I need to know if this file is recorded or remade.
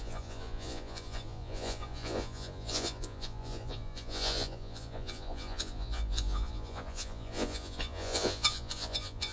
remade